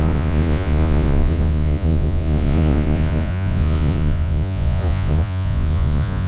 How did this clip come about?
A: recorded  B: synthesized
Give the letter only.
B